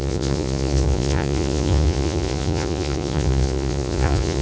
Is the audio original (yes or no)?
no